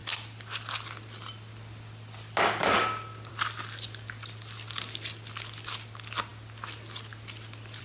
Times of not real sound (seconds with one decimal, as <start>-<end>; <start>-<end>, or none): none